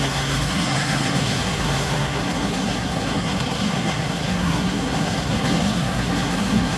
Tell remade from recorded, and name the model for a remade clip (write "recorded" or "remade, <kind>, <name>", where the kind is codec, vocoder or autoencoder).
remade, codec, SNAC